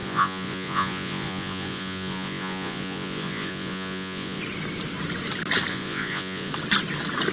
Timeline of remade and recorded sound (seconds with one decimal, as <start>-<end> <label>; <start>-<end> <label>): 0.0-4.4 remade; 4.4-5.7 recorded; 5.7-6.5 remade; 6.5-7.3 recorded